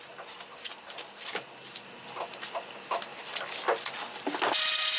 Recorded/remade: recorded